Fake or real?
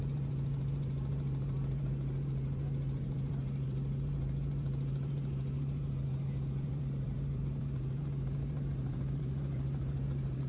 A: fake